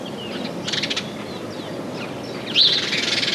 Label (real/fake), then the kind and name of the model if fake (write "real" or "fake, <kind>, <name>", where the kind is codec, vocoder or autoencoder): real